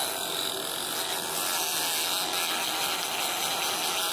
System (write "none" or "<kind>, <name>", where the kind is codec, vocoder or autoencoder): none